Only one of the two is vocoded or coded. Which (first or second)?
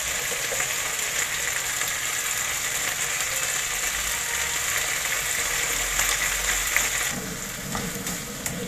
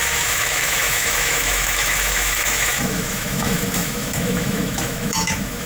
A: second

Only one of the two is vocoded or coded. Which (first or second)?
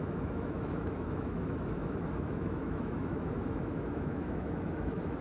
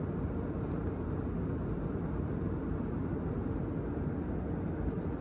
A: first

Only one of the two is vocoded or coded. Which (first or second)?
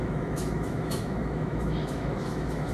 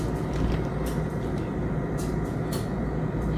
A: first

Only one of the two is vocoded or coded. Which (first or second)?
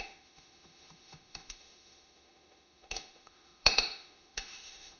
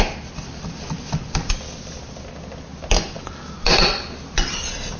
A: first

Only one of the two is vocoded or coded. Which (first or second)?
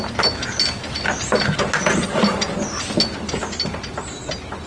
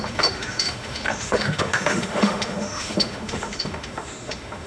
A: second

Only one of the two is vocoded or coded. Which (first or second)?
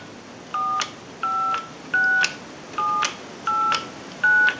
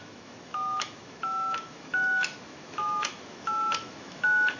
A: second